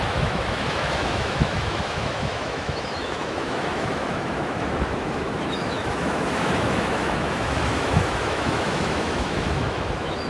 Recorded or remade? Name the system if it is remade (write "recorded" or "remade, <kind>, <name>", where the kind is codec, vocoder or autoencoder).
remade, autoencoder, DAC-VAE